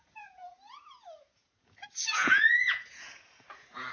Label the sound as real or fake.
fake